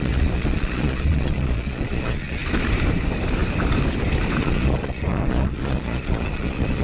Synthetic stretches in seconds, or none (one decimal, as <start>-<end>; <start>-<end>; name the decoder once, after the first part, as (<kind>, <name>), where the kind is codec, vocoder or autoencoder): 0.0-2.4 (vocoder, Vocos); 4.4-6.8